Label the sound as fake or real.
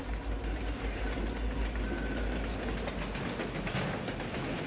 real